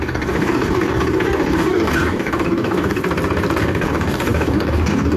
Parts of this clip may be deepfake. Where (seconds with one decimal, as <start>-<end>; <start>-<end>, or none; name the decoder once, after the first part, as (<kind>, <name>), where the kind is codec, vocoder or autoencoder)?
0.0-3.0 (codec, DAC); 3.6-5.2

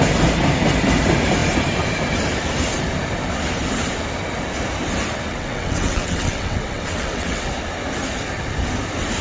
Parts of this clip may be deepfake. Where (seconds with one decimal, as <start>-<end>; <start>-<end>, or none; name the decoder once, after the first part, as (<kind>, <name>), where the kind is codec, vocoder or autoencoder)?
5.3-7.5 (vocoder, WaveNeXt)

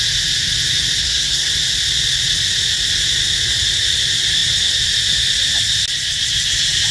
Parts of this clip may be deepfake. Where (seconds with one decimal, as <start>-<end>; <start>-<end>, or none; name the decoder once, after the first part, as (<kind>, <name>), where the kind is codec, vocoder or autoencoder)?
1.0-1.5 (codec, SNAC)

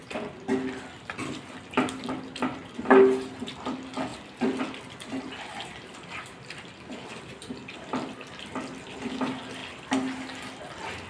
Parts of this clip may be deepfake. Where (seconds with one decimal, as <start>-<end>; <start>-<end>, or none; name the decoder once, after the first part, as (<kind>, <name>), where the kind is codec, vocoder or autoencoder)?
none

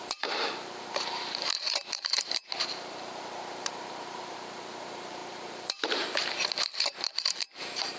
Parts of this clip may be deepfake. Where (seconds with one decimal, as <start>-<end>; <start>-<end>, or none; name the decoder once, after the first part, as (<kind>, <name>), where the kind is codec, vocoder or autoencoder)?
0.0-8.0 (vocoder, BigVGAN v2)

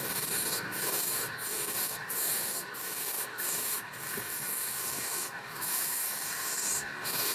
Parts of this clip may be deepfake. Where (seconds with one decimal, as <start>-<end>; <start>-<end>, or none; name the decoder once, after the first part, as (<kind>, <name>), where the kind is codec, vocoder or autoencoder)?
0.0-7.3 (codec, DAC)

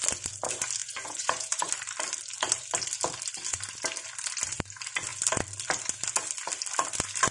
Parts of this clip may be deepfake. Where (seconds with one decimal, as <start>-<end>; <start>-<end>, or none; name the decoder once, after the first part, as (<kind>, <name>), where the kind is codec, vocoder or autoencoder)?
0.8-1.7 (vocoder, Vocos)

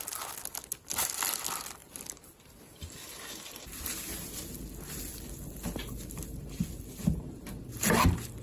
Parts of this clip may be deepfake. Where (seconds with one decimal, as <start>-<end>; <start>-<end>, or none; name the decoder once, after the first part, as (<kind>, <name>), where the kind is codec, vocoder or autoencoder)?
none